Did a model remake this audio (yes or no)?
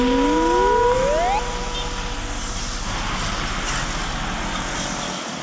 no